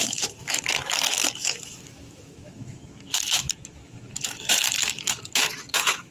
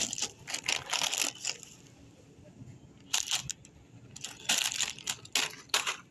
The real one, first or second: second